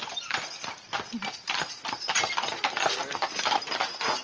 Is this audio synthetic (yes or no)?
no